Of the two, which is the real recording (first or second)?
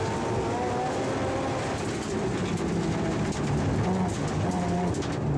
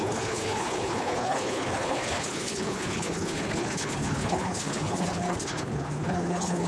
first